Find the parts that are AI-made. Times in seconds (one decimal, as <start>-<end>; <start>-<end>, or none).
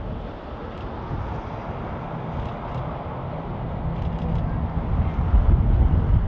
none